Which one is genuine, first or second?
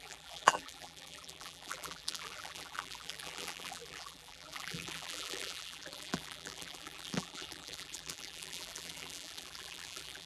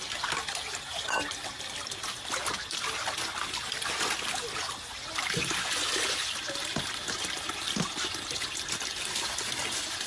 second